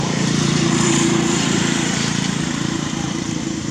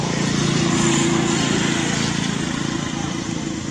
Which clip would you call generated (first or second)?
first